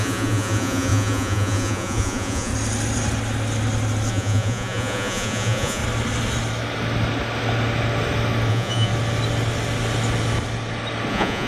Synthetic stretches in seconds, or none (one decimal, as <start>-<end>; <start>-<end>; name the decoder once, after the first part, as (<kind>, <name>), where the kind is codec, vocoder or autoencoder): 0.0-2.5 (vocoder, Vocos); 4.1-5.8; 8.5-8.9; 11.1-11.5